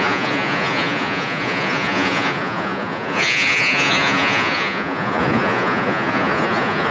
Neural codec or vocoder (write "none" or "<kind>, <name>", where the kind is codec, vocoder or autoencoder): vocoder, Vocos